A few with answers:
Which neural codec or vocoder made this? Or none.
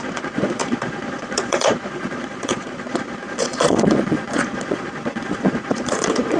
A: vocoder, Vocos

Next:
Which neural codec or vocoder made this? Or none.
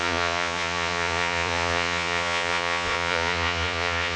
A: vocoder, Vocos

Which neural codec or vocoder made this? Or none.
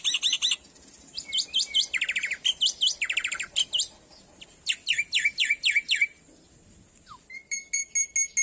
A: none